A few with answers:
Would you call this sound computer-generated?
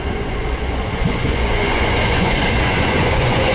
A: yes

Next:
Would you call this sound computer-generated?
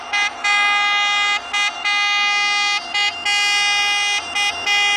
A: no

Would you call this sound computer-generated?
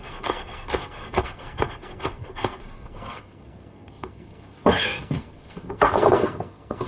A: yes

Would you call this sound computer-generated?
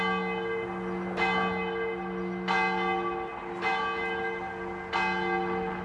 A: no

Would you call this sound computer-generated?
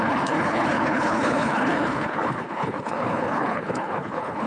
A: yes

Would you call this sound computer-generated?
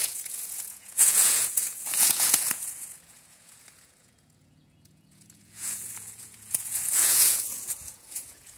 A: yes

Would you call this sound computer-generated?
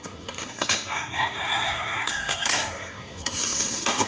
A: yes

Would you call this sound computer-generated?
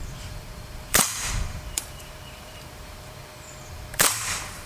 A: yes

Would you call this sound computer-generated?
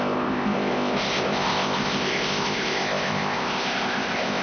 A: yes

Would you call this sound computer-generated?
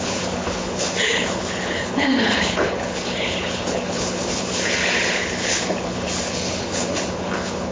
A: yes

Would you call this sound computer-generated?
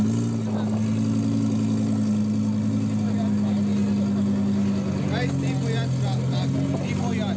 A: no